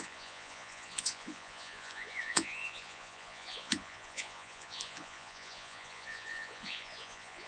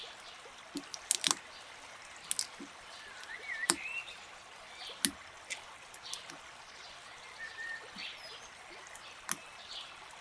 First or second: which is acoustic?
second